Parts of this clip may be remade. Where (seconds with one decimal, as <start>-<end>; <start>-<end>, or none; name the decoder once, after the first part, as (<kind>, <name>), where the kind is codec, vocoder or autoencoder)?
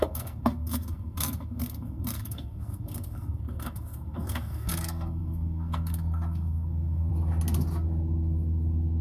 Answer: 0.0-7.1 (codec, SNAC)